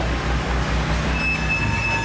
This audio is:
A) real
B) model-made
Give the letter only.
A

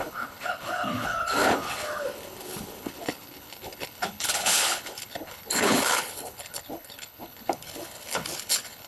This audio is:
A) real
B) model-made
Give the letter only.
B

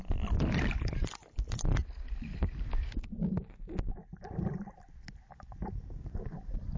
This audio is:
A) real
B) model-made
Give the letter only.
A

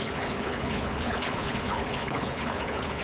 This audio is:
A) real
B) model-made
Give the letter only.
B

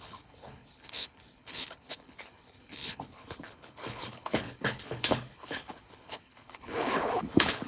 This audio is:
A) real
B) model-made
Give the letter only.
B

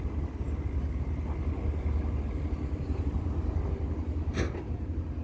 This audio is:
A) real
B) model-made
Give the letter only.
A